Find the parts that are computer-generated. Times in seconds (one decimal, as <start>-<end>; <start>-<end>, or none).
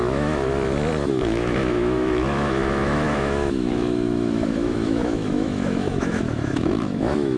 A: 0.0-0.5; 1.1-7.4